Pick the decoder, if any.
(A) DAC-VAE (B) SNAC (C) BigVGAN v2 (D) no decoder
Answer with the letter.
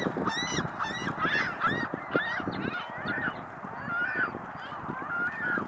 D